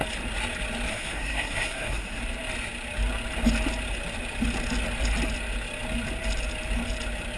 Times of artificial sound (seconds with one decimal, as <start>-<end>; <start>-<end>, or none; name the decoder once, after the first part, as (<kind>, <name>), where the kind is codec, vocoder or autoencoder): 0.9-2.2 (codec, SNAC)